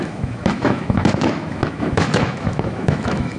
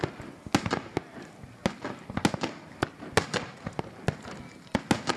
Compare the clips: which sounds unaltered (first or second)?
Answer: second